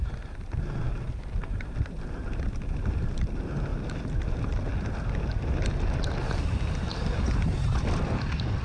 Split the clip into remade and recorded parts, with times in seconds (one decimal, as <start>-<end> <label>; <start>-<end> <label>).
0.0-8.6 recorded